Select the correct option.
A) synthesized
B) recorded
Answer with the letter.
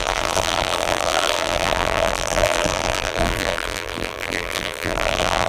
A